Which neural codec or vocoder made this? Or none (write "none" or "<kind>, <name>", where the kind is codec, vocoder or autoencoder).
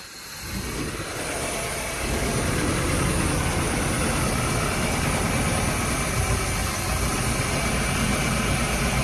none